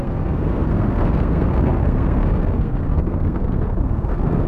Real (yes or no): no